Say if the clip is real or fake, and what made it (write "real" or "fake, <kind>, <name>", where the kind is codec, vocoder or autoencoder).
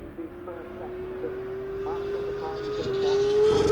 real